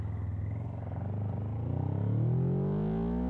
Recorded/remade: recorded